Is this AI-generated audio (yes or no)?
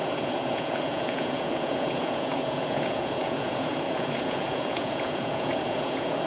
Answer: yes